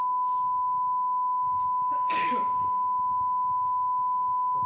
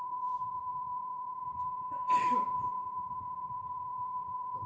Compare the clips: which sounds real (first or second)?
first